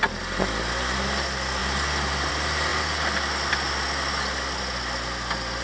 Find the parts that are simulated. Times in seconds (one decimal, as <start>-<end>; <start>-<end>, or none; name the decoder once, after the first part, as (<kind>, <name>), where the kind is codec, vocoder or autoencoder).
none